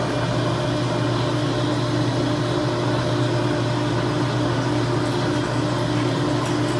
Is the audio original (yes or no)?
yes